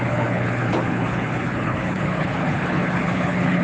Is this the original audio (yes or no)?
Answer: no